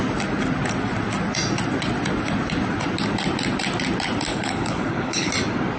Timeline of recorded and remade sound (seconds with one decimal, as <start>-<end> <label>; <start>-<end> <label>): 0.0-4.3 recorded; 4.3-5.3 remade; 5.3-5.8 recorded